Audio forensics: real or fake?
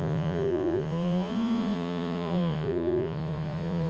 fake